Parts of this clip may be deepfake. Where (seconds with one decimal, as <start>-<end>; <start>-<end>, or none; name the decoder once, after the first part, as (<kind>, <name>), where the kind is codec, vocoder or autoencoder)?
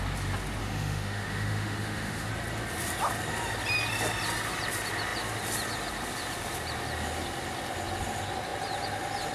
0.6-2.3 (autoencoder, DAC-VAE)